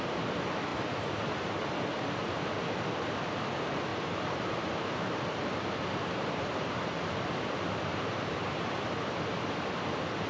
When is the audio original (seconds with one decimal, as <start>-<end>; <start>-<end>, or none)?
0.0-0.7; 1.6-3.9; 6.5-7.9; 8.7-10.3